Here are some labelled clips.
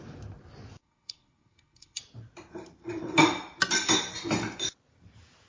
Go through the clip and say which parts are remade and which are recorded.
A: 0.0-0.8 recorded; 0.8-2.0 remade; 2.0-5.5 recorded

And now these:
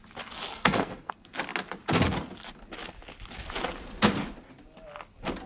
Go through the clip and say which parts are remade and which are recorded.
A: 0.0-0.5 recorded; 0.5-1.1 remade; 1.1-5.5 recorded